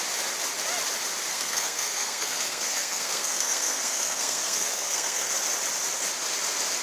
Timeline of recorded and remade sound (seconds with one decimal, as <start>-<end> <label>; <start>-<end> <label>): 0.0-1.3 recorded; 1.3-5.3 remade; 5.3-6.8 recorded